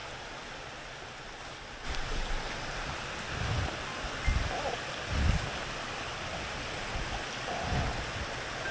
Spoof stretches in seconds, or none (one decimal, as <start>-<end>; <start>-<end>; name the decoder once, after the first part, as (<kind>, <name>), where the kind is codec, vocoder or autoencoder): none